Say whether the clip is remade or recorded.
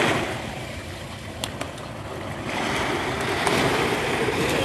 recorded